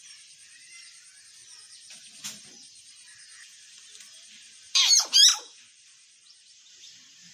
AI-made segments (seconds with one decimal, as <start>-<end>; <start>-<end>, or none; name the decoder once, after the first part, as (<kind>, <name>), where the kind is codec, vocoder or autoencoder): 0.0-1.4 (vocoder, BigVGAN v2); 2.4-7.3